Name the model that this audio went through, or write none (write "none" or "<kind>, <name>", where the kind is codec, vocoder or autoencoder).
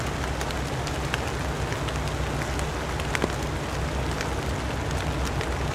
none